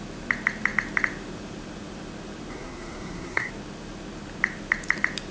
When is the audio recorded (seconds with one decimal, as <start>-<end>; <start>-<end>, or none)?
0.0-2.5; 3.5-5.3